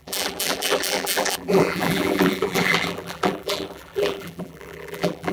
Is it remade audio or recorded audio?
remade